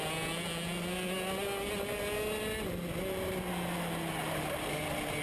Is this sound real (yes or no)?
yes